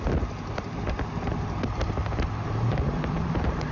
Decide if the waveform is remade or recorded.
remade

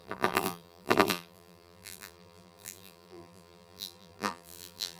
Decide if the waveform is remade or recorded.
remade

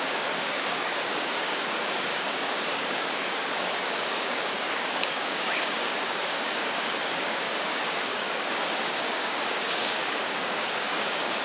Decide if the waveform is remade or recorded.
remade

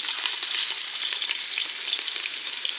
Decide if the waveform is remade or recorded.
recorded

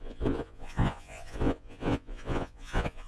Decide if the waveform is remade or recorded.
remade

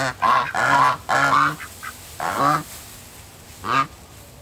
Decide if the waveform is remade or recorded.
recorded